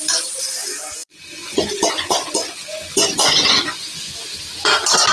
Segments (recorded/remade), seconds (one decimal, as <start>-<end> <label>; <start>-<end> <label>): 0.0-1.0 recorded; 1.0-4.1 remade; 4.1-5.1 recorded